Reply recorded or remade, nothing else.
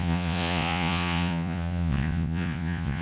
remade